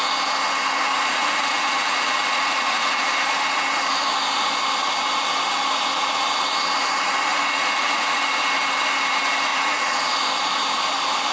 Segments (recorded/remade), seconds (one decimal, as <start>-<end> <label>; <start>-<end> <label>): 0.0-0.9 recorded; 0.9-3.0 remade; 3.0-7.3 recorded; 7.3-8.2 remade; 8.2-9.5 recorded; 9.5-10.1 remade; 10.1-11.3 recorded

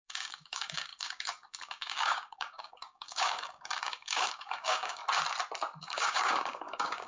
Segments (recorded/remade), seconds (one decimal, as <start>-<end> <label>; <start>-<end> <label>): 0.0-5.0 remade; 5.0-5.8 recorded; 5.8-7.1 remade

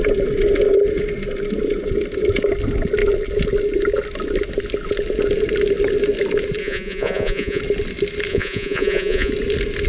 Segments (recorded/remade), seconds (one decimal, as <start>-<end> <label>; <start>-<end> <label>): 0.0-6.6 recorded; 6.6-7.6 remade; 7.6-8.3 recorded; 8.3-9.3 remade; 9.3-9.9 recorded

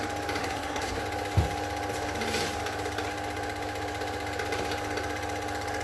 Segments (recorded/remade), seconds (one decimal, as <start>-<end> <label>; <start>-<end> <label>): 0.0-0.4 recorded; 0.4-1.0 remade; 1.0-5.8 recorded

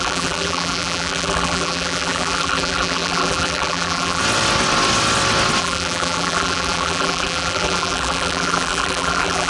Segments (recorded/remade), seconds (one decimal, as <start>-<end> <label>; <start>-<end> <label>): 0.0-4.2 remade; 4.2-5.6 recorded; 5.6-9.5 remade

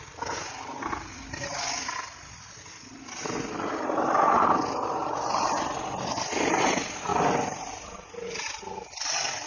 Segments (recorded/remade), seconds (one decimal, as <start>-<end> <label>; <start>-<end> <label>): 0.0-9.5 recorded

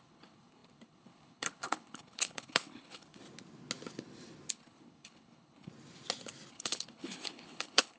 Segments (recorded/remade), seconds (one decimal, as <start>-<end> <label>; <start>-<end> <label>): 0.0-3.2 remade; 3.2-4.5 recorded; 4.5-5.7 remade; 5.7-6.5 recorded; 6.5-8.0 remade

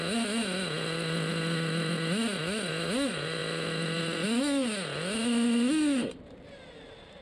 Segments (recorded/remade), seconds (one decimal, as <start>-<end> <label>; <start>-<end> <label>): 0.0-7.2 recorded